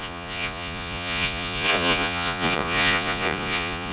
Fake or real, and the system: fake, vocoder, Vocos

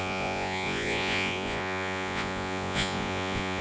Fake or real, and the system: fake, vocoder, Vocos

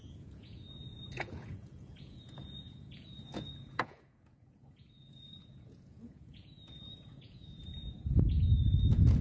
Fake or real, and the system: fake, vocoder, Vocos